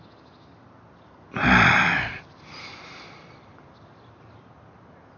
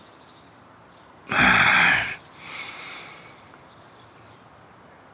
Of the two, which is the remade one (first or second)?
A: second